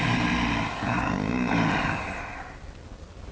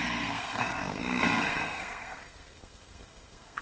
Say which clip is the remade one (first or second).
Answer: second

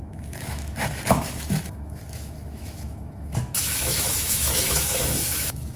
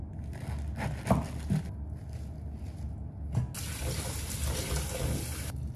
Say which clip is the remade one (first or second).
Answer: first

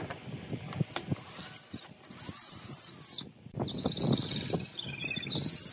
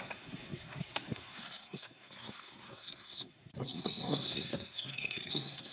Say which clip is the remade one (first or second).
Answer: second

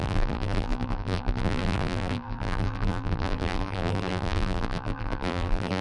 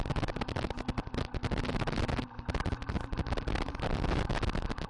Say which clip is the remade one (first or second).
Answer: first